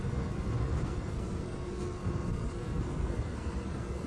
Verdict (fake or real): fake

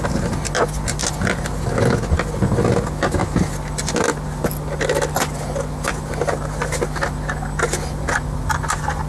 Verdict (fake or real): real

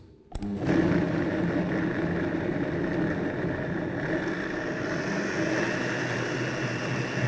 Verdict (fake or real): real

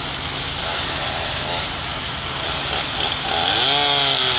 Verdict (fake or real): real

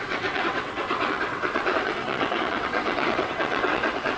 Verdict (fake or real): fake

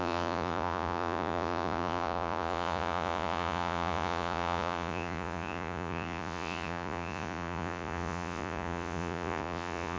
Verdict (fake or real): fake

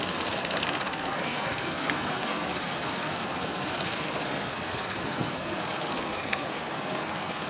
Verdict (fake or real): fake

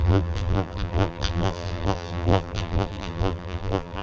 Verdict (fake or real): fake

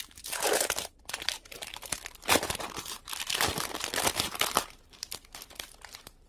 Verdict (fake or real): fake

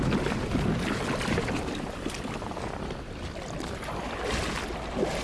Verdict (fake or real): real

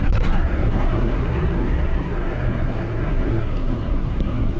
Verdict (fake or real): fake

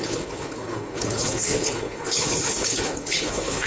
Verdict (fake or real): fake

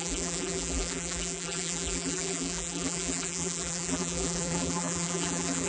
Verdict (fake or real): fake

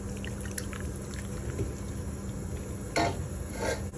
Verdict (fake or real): real